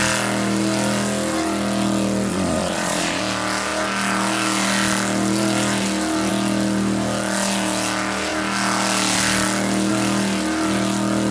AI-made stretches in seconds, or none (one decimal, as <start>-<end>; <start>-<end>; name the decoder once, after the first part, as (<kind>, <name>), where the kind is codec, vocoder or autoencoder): 2.3-3.2 (vocoder, Vocos)